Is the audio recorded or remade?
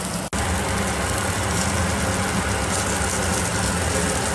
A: recorded